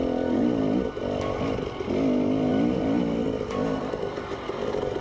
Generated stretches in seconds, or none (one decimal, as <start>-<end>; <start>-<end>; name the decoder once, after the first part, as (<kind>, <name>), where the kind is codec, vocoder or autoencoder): none